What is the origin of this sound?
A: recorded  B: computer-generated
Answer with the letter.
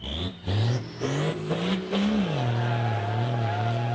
A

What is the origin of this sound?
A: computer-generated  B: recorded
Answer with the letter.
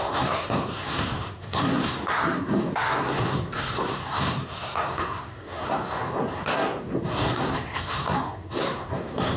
A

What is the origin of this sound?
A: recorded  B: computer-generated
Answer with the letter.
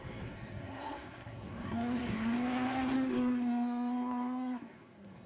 B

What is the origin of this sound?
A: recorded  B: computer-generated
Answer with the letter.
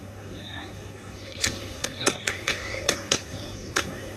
B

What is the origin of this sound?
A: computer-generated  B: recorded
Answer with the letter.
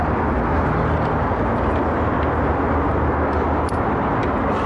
B